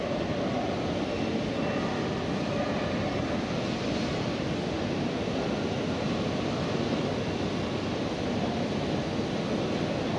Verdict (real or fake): real